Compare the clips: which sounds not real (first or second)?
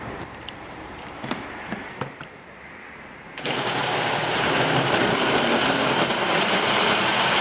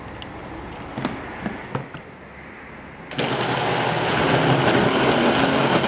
first